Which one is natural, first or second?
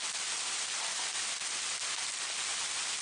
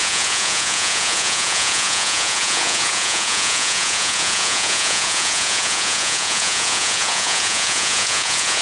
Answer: first